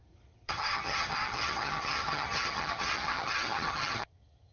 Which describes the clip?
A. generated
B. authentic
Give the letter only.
A